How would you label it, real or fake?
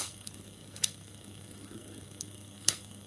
fake